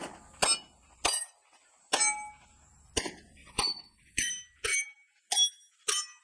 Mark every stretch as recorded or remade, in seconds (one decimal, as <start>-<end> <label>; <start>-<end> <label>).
0.0-3.4 recorded; 3.4-4.3 remade; 4.3-6.2 recorded